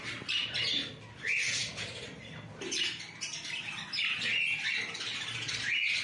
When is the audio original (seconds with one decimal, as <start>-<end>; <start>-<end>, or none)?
0.0-6.0